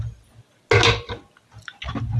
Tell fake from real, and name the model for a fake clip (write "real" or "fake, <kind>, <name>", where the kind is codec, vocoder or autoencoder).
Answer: real